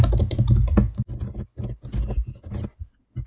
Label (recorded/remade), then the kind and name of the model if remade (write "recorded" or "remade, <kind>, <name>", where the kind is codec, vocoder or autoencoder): recorded